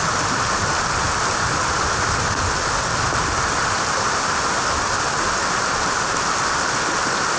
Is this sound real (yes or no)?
yes